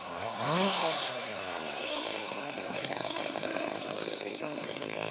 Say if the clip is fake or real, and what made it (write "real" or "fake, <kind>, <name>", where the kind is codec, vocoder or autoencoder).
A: fake, codec, SNAC